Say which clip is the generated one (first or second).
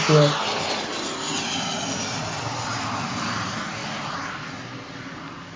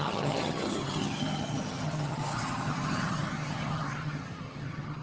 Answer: second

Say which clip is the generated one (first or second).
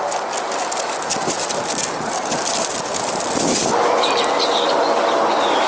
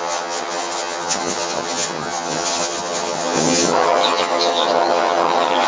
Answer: second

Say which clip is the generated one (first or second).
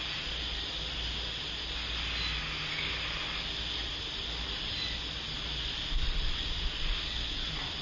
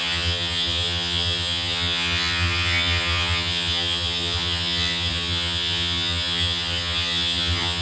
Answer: second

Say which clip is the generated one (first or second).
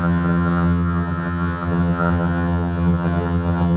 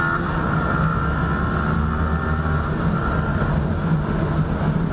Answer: first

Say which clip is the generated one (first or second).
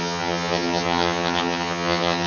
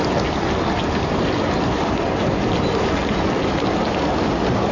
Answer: first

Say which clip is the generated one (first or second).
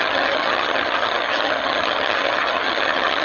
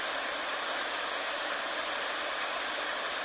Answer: first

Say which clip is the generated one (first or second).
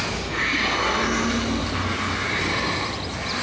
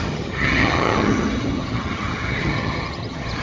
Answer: second